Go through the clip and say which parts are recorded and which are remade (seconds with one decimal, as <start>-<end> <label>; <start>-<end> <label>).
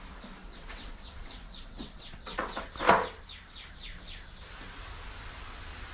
0.0-0.4 recorded; 0.4-2.7 remade; 2.7-5.9 recorded